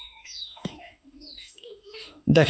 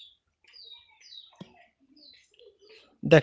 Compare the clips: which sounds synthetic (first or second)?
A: first